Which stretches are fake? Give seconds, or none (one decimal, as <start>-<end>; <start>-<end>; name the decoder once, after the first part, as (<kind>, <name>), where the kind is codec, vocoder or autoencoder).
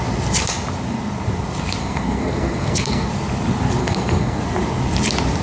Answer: 1.8-3.1 (codec, SNAC); 3.8-4.4